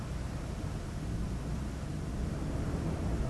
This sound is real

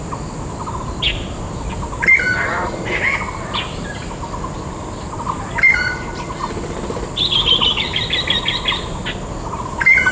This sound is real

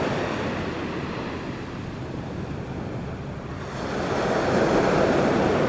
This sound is real